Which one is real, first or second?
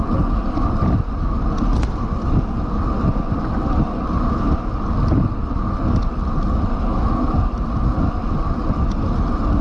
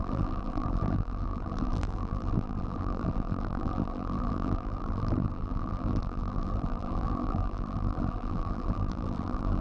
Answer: first